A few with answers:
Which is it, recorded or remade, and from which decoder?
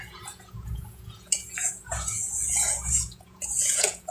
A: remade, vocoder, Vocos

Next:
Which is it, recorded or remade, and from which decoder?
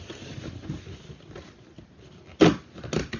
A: recorded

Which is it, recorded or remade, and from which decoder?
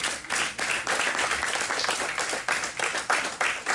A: remade, vocoder, BigVGAN v2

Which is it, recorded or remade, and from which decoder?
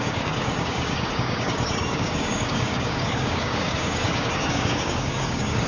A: remade, codec, DAC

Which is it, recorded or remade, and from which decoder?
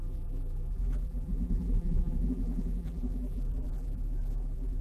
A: remade, vocoder, BigVGAN v2